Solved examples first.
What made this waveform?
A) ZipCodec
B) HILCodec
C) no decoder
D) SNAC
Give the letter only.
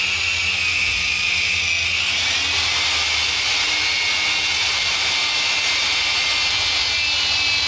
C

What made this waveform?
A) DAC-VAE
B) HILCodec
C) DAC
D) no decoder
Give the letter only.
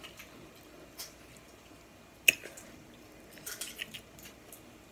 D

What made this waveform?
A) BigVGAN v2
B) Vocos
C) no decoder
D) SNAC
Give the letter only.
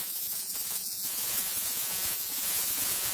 B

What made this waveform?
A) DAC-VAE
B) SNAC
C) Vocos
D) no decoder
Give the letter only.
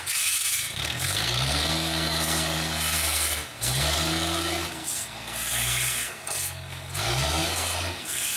B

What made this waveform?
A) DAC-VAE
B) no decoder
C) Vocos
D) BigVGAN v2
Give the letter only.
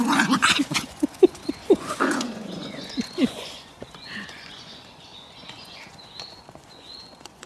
C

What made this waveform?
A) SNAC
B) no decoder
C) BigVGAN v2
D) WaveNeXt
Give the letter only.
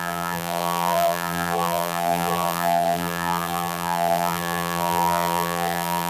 C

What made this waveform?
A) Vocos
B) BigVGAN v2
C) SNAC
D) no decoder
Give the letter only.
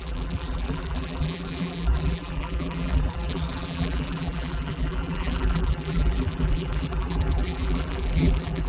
B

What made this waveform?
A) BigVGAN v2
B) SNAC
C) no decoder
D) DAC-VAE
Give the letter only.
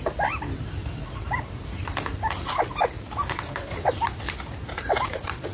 C